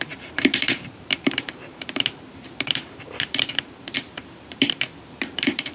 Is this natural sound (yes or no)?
no